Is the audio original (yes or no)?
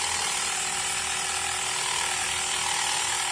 yes